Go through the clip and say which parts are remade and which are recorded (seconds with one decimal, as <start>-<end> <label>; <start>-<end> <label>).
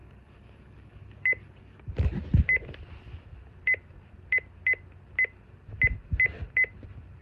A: 0.0-1.8 remade; 1.8-7.2 recorded